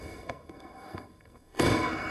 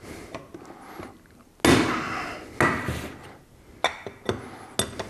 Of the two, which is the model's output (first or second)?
first